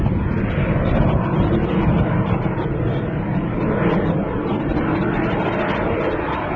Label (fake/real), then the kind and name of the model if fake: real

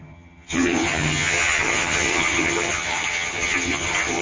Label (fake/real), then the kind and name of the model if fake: fake, vocoder, HiFi-GAN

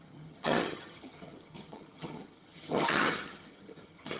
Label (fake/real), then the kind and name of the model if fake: fake, vocoder, HiFi-GAN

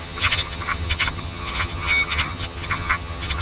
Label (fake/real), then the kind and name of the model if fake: fake, vocoder, HiFi-GAN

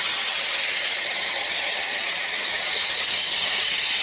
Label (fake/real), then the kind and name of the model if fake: fake, vocoder, HiFi-GAN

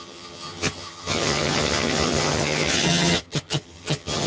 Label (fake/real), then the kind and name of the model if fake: fake, vocoder, HiFi-GAN